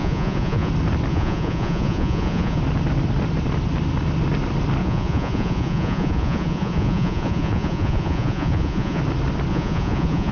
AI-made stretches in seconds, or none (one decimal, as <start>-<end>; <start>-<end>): 0.0-0.7; 1.1-2.6; 4.8-9.0; 9.5-10.3